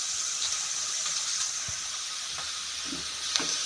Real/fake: real